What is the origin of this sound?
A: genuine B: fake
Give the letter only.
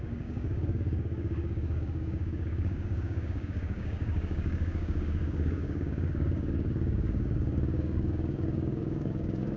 B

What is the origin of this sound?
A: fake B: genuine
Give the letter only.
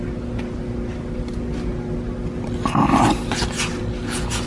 B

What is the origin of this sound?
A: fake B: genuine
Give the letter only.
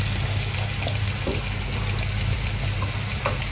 B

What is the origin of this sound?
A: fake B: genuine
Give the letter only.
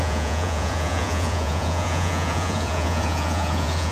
A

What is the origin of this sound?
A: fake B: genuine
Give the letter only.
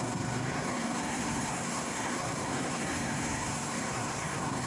A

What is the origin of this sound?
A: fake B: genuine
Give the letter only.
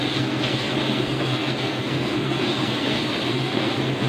A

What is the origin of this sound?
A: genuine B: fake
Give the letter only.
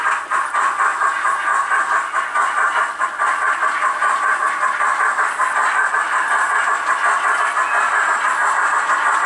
A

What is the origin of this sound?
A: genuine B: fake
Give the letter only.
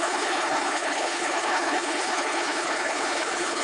B